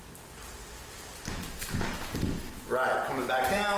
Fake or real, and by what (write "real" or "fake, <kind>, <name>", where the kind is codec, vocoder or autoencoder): real